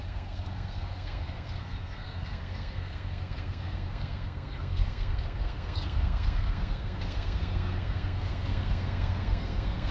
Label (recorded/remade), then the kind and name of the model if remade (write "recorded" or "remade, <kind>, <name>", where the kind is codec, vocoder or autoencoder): remade, codec, SNAC